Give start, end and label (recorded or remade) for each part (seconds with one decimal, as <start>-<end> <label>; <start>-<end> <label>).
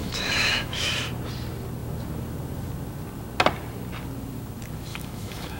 0.0-0.9 remade; 0.9-4.9 recorded; 4.9-5.6 remade